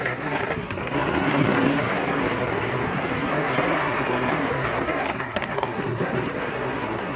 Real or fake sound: fake